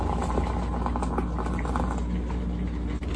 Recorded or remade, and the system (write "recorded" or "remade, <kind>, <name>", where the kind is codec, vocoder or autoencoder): recorded